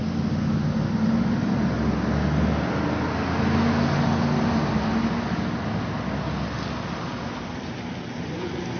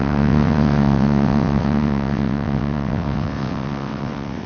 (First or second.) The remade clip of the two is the second